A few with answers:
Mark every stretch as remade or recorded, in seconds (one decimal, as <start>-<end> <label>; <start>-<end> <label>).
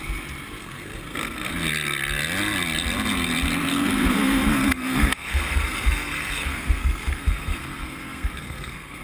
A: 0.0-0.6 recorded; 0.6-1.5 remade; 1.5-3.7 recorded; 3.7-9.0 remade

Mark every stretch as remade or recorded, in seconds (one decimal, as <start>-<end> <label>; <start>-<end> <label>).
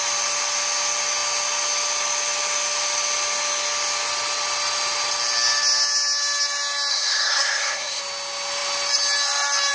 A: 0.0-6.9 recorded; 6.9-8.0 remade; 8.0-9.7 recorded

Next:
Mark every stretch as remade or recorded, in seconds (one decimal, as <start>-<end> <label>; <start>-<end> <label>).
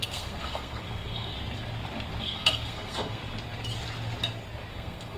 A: 0.0-1.3 remade; 1.3-2.2 recorded; 2.2-3.2 remade; 3.2-4.7 recorded; 4.7-5.2 remade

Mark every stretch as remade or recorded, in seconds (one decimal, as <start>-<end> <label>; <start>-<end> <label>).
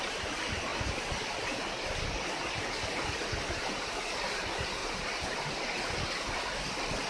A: 0.0-7.1 recorded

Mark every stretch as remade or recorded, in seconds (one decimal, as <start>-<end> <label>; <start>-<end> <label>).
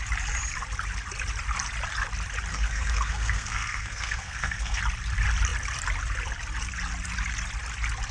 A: 0.0-2.5 recorded; 2.5-4.8 remade; 4.8-8.1 recorded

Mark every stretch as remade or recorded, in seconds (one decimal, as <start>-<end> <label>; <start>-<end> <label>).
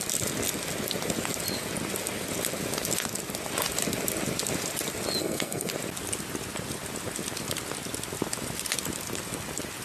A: 0.0-5.2 recorded; 5.2-5.7 remade; 5.7-9.8 recorded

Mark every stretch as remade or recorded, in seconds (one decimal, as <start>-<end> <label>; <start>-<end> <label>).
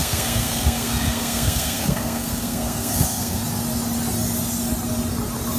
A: 0.0-3.4 remade; 3.4-5.6 recorded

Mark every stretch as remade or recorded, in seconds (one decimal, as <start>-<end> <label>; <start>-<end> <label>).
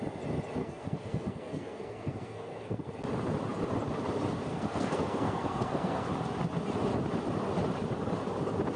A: 0.0-0.6 recorded; 0.6-2.9 remade; 2.9-4.5 recorded; 4.5-6.1 remade; 6.1-8.8 recorded